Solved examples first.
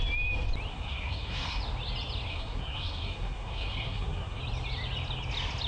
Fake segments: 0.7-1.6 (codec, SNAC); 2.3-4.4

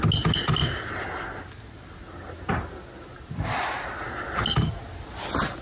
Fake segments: none

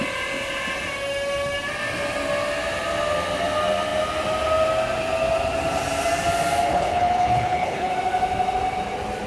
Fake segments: 6.7-7.9 (codec, HILCodec)

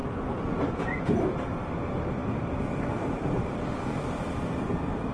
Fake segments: 2.2-5.1 (vocoder, BigVGAN v2)

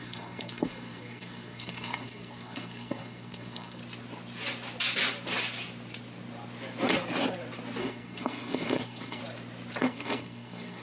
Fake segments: 0.0-3.8 (codec, SNAC); 7.8-9.2; 9.8-10.8